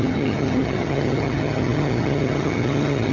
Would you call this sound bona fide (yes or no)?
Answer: no